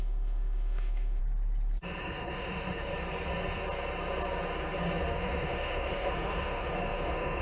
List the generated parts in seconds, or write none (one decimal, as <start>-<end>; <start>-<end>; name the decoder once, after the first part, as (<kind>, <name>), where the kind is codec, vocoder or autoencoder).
0.0-1.2 (autoencoder, DAC-VAE); 2.0-2.9; 5.1-7.4